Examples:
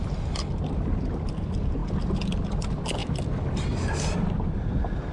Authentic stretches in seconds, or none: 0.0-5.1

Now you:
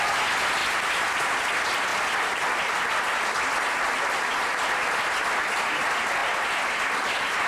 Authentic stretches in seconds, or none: 0.0-7.5

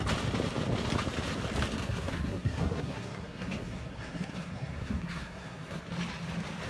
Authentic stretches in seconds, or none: 0.0-1.8; 5.8-6.7

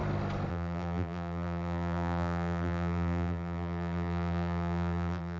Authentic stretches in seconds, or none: 0.0-0.5